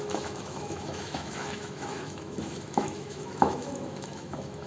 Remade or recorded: remade